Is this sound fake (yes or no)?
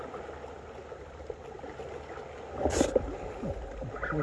no